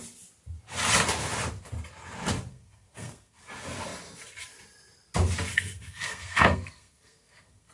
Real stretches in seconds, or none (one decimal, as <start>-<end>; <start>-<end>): 0.0-2.5; 3.4-5.5